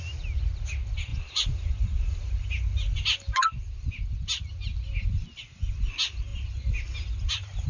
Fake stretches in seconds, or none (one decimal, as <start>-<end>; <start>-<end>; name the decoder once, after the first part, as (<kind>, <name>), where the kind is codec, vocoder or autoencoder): 1.1-2.5 (vocoder, BigVGAN v2)